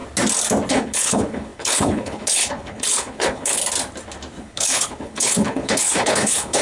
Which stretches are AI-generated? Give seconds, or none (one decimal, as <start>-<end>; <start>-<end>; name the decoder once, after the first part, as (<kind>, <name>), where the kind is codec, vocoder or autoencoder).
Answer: 0.7-3.6 (codec, HILCodec); 4.4-6.6

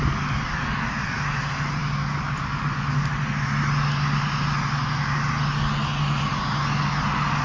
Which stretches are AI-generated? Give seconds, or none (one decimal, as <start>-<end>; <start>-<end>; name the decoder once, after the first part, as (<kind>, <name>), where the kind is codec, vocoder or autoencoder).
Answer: none

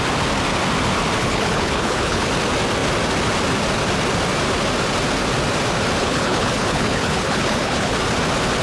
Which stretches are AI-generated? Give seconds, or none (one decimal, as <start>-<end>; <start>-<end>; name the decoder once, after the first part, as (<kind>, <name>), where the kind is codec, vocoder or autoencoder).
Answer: 1.2-2.3 (codec, HILCodec); 6.0-7.9

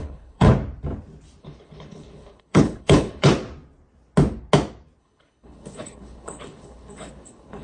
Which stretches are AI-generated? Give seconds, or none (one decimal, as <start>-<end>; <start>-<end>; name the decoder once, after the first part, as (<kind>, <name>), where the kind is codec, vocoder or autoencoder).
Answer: 0.0-0.5 (codec, HILCodec); 1.4-3.3; 5.0-7.6

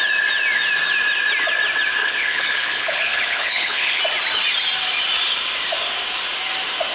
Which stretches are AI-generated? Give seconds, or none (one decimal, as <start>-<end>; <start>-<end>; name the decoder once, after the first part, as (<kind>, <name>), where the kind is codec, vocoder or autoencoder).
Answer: 2.0-4.0 (codec, HILCodec)

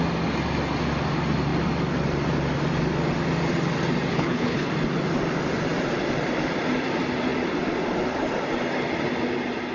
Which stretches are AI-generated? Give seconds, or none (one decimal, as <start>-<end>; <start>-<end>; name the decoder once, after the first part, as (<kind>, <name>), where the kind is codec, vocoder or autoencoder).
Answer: 4.1-4.7 (codec, HILCodec)